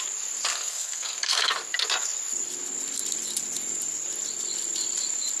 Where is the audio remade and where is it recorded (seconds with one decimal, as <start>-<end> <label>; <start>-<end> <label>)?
0.0-0.5 recorded; 0.5-1.5 remade; 1.5-5.4 recorded